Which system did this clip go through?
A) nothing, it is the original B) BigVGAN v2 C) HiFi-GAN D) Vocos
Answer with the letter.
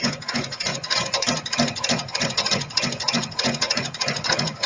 D